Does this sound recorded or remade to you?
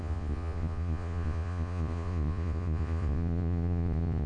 remade